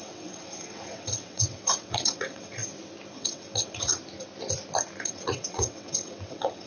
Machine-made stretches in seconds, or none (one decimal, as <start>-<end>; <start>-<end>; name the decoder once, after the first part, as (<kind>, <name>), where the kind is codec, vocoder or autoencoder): 0.0-2.6 (vocoder, WaveNeXt); 3.1-4.0; 5.0-6.7